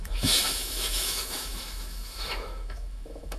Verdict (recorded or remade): remade